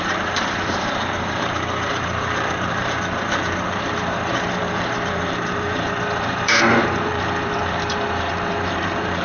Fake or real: fake